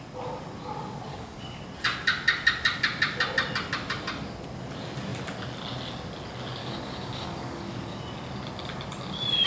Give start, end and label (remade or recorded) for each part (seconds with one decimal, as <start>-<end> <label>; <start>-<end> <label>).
0.0-1.1 recorded; 1.1-1.6 remade; 1.6-6.6 recorded; 6.6-8.0 remade; 8.0-9.5 recorded